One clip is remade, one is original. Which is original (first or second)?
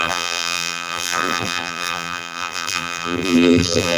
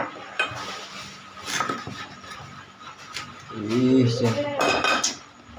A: second